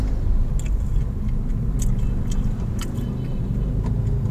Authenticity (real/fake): real